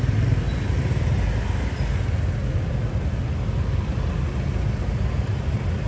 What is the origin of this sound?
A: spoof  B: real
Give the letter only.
B